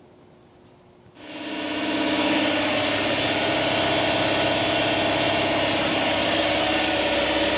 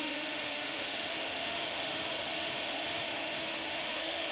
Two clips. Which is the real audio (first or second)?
first